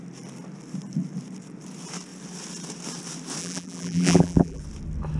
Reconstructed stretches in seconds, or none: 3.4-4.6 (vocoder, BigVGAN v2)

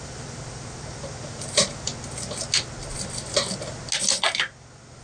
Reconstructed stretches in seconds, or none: 0.0-1.9 (vocoder, BigVGAN v2)

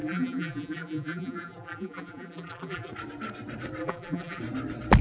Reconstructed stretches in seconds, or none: 0.0-2.9 (vocoder, BigVGAN v2); 3.8-4.4

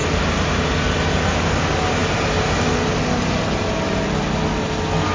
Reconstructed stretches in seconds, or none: 2.0-2.5 (vocoder, BigVGAN v2)